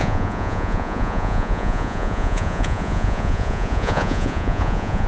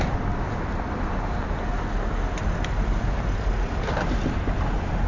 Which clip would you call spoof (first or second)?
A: first